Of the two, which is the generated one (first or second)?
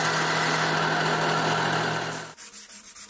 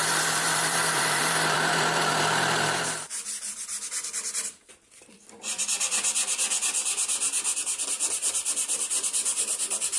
second